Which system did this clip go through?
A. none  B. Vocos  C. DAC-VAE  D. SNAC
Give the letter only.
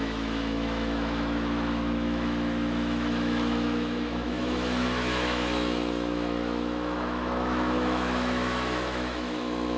C